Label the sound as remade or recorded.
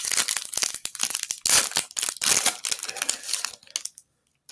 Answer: recorded